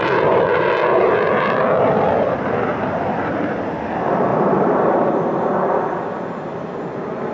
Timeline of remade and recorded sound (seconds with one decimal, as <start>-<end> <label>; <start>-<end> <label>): 0.0-2.7 recorded; 2.7-3.9 remade; 3.9-4.3 recorded; 4.3-5.9 remade; 5.9-7.3 recorded